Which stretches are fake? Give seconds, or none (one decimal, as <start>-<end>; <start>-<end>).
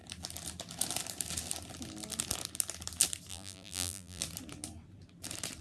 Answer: 3.3-4.2